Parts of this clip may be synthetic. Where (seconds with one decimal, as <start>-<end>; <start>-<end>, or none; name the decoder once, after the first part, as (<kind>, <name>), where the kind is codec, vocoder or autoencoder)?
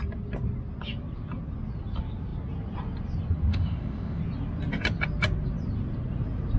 3.5-4.2 (autoencoder, DAC-VAE)